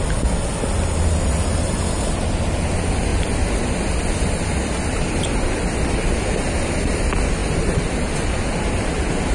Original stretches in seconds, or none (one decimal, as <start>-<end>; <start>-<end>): 0.0-9.3